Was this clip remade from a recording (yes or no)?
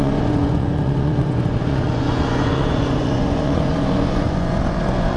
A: yes